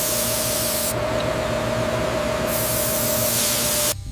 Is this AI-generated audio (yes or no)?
no